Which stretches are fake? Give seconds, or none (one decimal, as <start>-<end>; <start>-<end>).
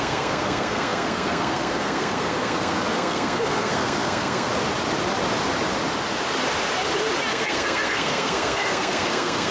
0.0-4.5; 7.3-9.5